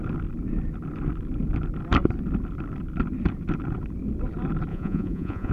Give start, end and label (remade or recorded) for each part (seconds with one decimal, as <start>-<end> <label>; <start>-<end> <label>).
0.0-4.7 recorded; 4.7-5.5 remade